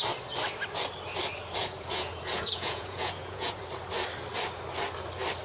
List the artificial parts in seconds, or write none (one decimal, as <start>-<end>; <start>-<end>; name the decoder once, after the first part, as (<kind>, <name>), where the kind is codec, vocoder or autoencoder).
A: 1.6-3.6 (vocoder, Vocos)

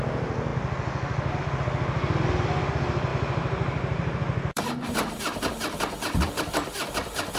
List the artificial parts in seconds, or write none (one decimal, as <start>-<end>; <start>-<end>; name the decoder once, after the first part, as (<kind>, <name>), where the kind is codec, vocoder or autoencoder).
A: 3.1-5.5 (vocoder, BigVGAN v2)

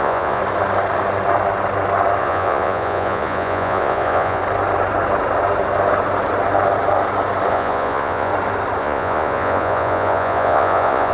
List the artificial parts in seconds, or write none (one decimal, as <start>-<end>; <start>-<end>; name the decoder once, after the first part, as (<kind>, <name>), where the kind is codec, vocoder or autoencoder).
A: 0.0-0.4 (vocoder, Vocos); 2.2-4.4; 7.5-8.3; 8.8-11.1